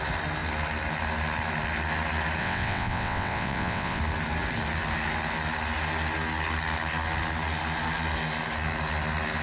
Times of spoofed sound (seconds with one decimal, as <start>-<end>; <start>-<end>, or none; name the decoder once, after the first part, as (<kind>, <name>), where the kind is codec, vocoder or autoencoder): 2.4-4.0 (vocoder, WaveNeXt)